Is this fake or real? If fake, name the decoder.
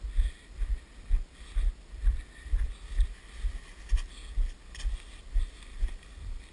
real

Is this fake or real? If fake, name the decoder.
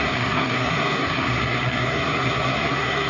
fake, codec, SNAC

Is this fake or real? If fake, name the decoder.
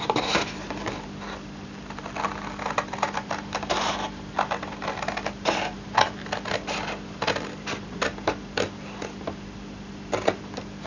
real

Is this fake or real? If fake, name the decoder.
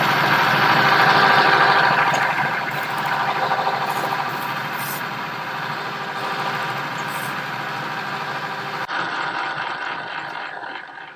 real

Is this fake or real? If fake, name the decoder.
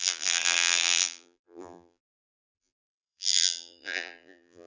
fake, vocoder, BigVGAN v2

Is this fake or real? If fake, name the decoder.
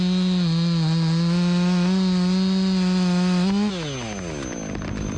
real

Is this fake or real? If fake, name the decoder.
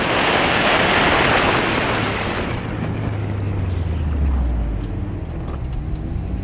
real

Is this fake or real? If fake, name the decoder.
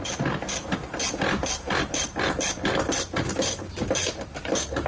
real